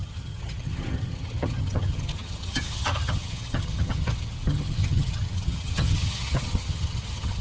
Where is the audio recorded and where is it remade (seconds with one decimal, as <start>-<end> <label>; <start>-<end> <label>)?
0.0-7.4 remade